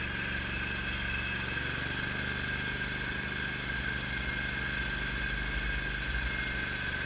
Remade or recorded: recorded